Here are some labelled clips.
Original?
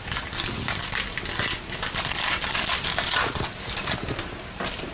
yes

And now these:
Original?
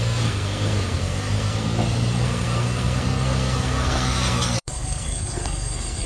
no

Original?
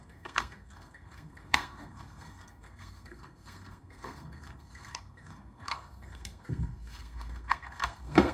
no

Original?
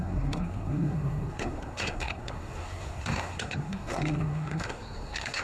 no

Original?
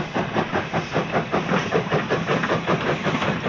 yes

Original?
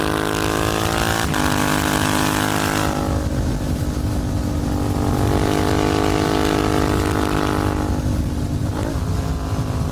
yes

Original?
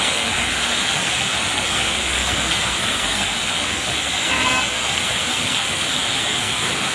no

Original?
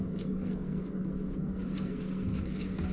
no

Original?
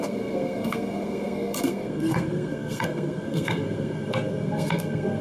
no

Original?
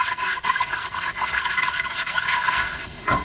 no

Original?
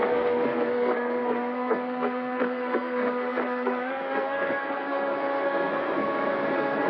no